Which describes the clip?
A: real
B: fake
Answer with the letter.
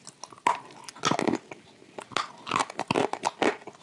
A